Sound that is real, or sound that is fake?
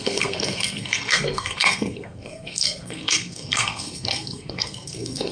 fake